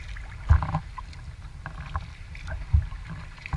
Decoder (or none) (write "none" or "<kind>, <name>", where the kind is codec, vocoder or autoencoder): none